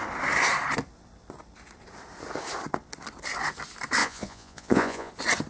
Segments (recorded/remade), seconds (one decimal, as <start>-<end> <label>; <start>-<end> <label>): 0.0-4.0 recorded; 4.0-5.1 remade; 5.1-5.5 recorded